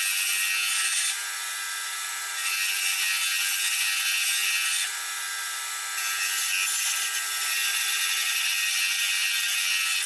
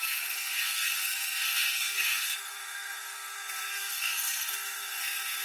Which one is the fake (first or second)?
second